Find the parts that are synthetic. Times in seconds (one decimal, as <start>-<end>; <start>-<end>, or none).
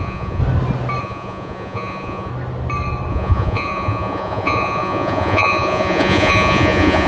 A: 0.0-0.4; 1.0-2.3; 3.1-7.1